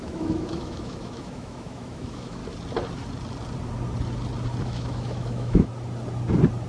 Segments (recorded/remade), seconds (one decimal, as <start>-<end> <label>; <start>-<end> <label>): 0.0-2.4 remade; 2.4-4.6 recorded; 4.6-5.7 remade; 5.7-6.7 recorded